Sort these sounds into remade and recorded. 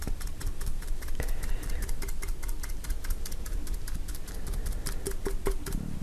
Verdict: recorded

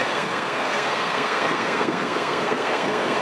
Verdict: remade